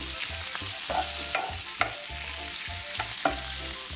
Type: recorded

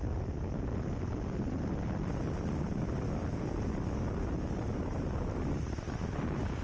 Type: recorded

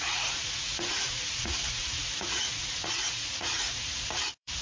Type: remade